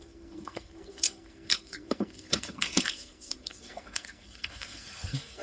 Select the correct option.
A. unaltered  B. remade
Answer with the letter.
B